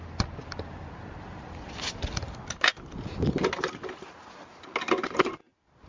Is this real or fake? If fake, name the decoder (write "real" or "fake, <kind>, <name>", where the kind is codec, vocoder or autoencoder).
real